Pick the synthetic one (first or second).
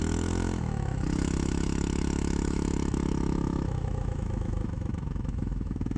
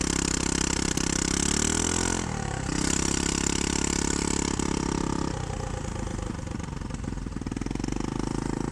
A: first